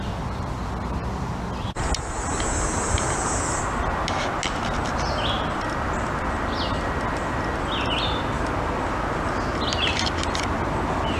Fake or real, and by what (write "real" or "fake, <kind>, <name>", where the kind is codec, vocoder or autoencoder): real